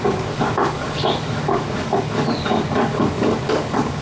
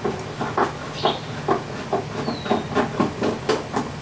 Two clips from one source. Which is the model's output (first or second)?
first